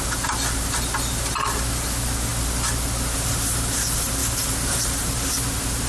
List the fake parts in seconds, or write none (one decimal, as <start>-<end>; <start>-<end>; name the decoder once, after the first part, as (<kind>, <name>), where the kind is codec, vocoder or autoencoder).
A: 4.2-5.3 (vocoder, BigVGAN v2)